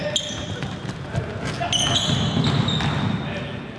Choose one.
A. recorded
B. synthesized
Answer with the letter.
A